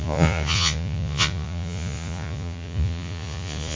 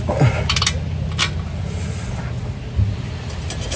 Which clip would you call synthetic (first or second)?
first